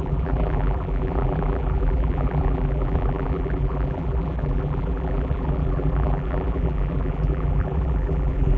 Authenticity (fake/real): fake